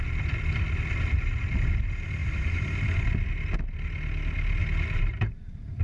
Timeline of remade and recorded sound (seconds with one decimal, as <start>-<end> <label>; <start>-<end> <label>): 0.0-2.2 recorded; 2.2-3.3 remade; 3.3-4.6 recorded; 4.6-5.8 remade